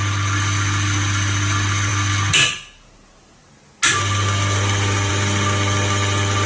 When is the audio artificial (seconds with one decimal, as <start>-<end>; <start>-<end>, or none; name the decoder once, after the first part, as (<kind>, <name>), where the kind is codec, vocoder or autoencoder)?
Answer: none